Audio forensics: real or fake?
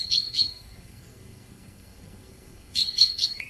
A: fake